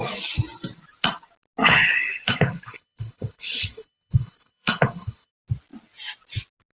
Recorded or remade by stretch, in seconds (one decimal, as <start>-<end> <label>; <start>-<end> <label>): 0.0-1.6 recorded; 1.6-5.3 remade; 5.3-6.8 recorded